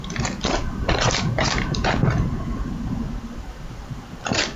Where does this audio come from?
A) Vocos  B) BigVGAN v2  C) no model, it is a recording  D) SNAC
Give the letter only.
B